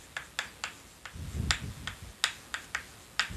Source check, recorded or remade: recorded